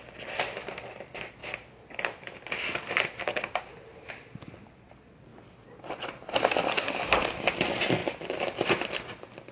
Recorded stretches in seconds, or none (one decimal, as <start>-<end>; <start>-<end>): 0.0-9.5